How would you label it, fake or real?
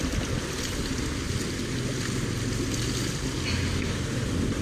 real